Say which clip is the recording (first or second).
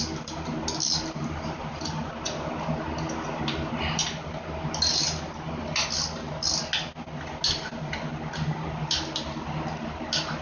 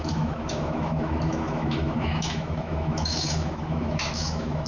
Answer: first